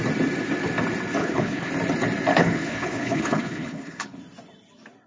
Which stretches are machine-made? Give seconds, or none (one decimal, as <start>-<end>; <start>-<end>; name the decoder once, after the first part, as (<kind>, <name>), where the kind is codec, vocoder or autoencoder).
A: 1.2-1.7 (codec, HILCodec); 2.3-4.2